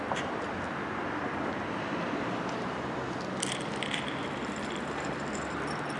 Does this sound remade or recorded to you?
remade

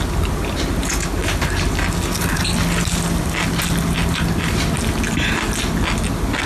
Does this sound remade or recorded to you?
recorded